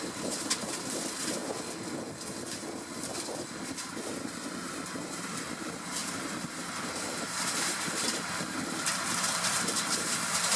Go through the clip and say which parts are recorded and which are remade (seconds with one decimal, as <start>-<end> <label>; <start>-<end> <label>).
0.0-1.4 remade; 1.4-4.1 recorded; 4.1-10.6 remade